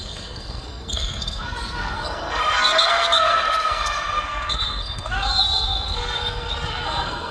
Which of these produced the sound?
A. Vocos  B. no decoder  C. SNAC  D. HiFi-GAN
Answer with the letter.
C